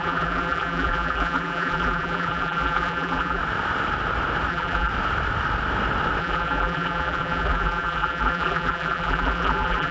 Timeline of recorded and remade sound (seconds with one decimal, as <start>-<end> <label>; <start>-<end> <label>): 0.0-3.4 remade; 3.4-4.5 recorded; 4.5-4.9 remade; 4.9-6.2 recorded; 6.2-9.9 remade